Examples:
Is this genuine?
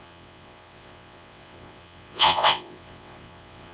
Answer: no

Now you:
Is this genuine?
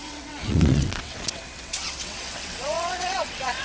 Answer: no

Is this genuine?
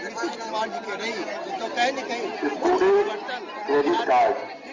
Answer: yes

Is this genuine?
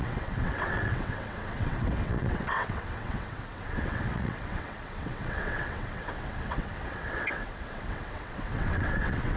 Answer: no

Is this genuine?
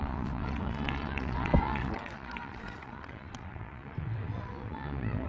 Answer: no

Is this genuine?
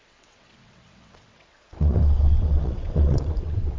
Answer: no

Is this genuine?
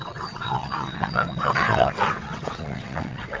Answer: no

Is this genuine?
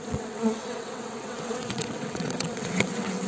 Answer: no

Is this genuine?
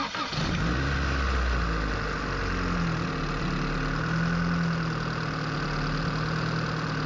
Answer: yes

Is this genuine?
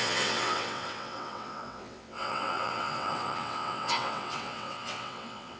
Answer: no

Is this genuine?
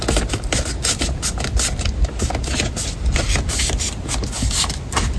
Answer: yes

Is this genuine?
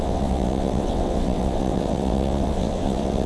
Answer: no